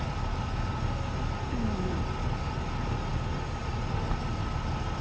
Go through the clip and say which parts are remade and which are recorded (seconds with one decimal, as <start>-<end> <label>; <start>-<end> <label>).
0.0-5.0 recorded